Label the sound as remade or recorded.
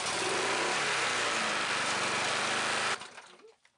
recorded